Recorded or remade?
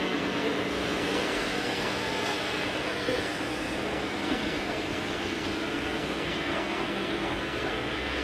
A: remade